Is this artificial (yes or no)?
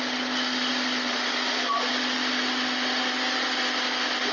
no